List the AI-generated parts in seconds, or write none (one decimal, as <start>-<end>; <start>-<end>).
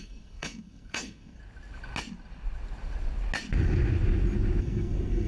0.0-1.4; 4.6-5.3